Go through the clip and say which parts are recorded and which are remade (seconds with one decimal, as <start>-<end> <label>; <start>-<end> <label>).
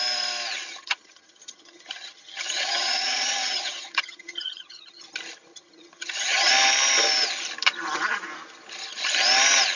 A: 0.0-0.8 recorded; 0.8-5.0 remade; 5.0-5.5 recorded; 5.5-6.5 remade; 6.5-9.8 recorded